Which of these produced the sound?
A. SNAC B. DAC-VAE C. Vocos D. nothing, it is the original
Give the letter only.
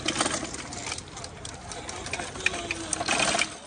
D